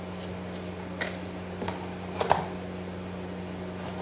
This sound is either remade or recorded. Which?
recorded